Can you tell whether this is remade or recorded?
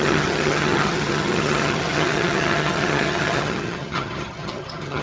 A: remade